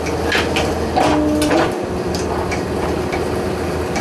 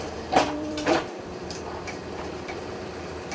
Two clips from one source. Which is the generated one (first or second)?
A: second